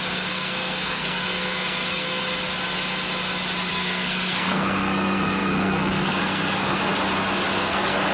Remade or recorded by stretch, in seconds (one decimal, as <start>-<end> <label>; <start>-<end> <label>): 0.0-2.2 remade; 2.2-3.7 recorded; 3.7-6.9 remade; 6.9-7.5 recorded; 7.5-8.1 remade